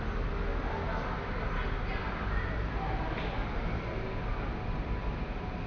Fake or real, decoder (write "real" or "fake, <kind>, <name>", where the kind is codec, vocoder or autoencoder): real